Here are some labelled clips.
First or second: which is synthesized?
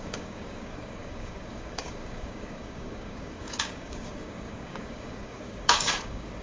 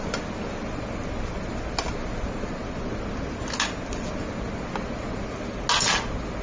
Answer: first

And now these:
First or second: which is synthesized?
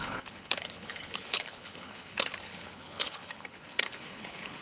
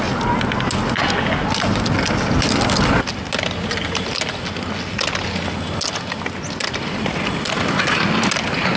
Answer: first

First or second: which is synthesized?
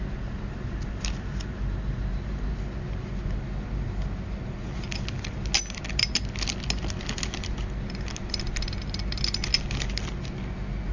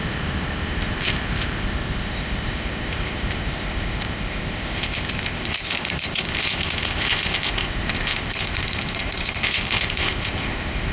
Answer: second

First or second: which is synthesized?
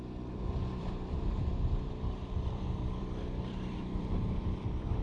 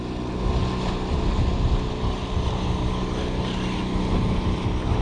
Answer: first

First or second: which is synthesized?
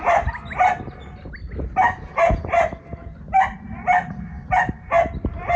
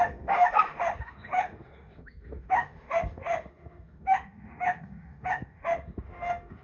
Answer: second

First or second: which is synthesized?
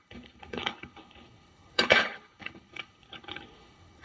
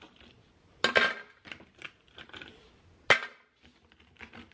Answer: first